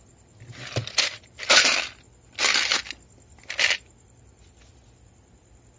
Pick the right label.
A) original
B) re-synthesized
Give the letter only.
A